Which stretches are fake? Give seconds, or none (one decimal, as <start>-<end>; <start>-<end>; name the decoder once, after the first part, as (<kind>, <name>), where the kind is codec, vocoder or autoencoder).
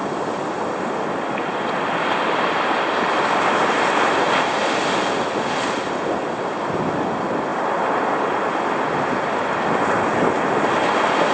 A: none